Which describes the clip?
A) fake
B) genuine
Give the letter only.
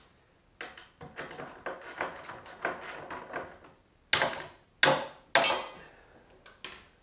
B